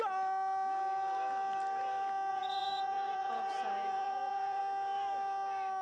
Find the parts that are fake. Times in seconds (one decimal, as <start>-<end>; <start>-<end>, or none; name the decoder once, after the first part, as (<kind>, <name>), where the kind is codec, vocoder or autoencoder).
2.3-4.6 (vocoder, Vocos)